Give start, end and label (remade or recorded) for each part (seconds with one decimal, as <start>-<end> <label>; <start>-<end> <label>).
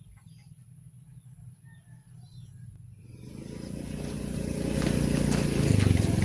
0.0-6.2 recorded